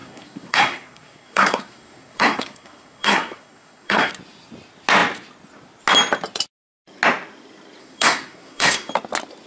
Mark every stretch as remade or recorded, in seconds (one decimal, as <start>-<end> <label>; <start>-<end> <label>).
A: 0.0-4.1 remade; 4.1-7.8 recorded; 7.8-8.9 remade; 8.9-9.5 recorded